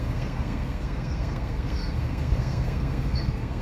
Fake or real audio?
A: fake